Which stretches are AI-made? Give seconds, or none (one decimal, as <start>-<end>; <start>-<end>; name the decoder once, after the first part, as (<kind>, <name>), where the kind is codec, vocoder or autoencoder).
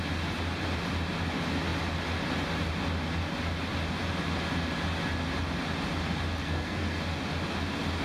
6.4-7.0 (codec, SNAC)